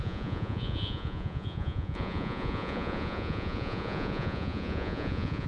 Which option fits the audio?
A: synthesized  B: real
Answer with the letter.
A